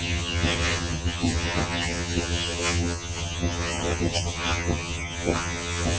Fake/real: fake